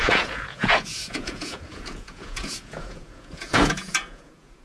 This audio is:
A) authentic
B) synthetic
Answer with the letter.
B